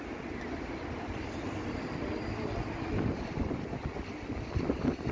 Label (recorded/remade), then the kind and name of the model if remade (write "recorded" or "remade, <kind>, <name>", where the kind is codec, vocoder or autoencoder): recorded